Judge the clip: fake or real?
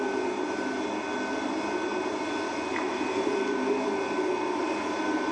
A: real